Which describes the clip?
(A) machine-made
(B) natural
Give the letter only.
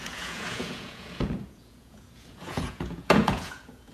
A